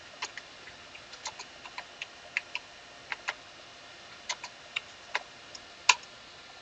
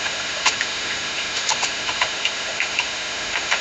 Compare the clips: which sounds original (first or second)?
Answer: first